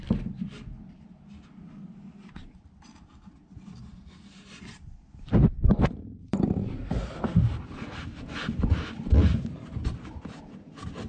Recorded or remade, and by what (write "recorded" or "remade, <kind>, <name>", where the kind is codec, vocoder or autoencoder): recorded